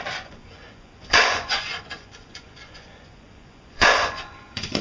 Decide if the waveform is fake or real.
fake